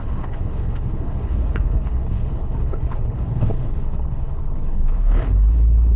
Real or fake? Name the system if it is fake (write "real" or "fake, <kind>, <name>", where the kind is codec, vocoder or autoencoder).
fake, codec, HILCodec